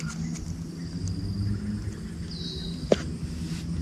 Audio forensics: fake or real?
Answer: real